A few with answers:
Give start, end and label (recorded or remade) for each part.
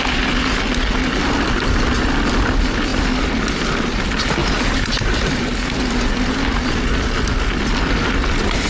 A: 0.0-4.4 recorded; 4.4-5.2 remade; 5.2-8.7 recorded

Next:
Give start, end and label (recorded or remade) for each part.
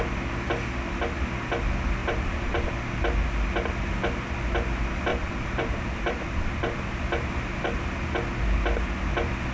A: 0.0-2.0 recorded; 2.0-2.7 remade; 2.7-5.1 recorded; 5.1-7.0 remade; 7.0-9.5 recorded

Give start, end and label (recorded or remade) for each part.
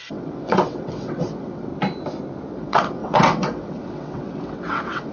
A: 0.0-1.7 remade; 1.7-2.5 recorded; 2.5-5.1 remade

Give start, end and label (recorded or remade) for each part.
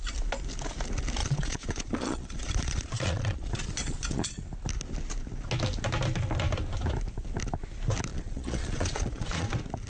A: 0.0-1.2 recorded; 1.2-4.4 remade; 4.4-8.1 recorded; 8.1-9.5 remade; 9.5-9.9 recorded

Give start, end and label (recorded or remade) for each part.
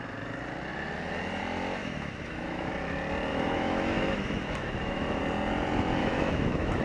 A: 0.0-1.8 recorded; 1.8-2.7 remade; 2.7-3.3 recorded; 3.3-5.2 remade; 5.2-6.0 recorded; 6.0-6.8 remade